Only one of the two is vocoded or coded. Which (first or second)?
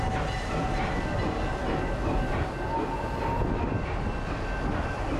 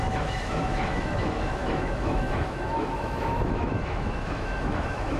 second